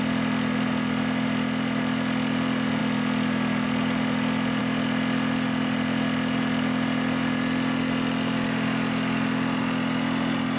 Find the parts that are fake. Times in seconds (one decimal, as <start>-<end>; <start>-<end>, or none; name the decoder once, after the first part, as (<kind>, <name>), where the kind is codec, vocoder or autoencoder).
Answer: none